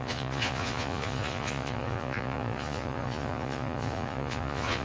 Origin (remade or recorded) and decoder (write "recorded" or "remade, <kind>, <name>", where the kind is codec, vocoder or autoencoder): remade, vocoder, Vocos